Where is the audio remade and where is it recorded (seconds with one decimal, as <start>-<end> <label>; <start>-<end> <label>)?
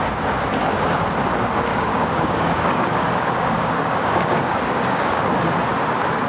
0.0-1.7 recorded; 1.7-5.2 remade; 5.2-6.3 recorded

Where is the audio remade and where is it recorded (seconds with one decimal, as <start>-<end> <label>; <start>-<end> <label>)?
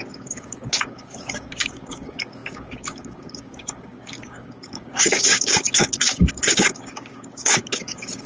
0.0-8.3 remade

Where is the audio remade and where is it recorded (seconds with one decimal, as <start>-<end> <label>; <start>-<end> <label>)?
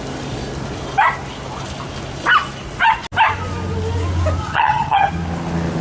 0.0-4.4 recorded; 4.4-5.1 remade; 5.1-5.8 recorded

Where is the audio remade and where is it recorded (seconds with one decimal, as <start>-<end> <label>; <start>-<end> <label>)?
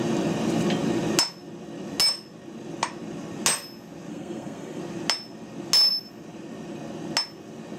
0.0-4.1 recorded; 4.1-4.8 remade; 4.8-7.8 recorded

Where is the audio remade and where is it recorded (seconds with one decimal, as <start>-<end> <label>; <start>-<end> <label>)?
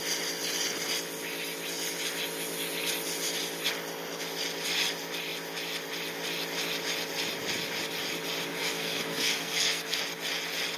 0.0-8.5 recorded; 8.5-10.0 remade; 10.0-10.8 recorded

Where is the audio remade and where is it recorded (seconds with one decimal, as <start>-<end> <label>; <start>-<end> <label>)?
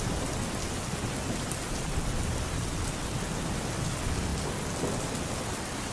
0.0-5.9 recorded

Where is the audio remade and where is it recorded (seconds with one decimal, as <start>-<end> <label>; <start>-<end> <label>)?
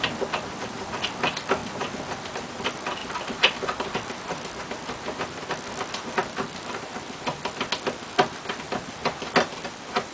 0.0-10.1 recorded